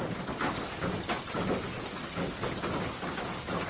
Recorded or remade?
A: recorded